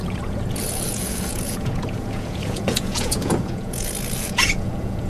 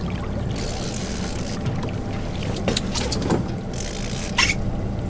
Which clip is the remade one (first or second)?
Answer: first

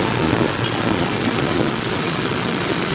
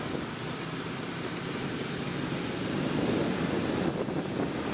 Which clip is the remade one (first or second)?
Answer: first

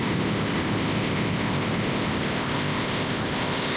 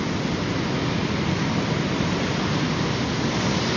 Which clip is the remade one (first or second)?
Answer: first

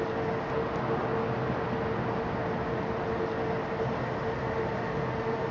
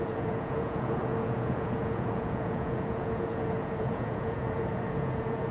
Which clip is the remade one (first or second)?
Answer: second